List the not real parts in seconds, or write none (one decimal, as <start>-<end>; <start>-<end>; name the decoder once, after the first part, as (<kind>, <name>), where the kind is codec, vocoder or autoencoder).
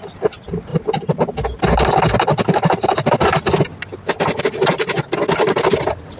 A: none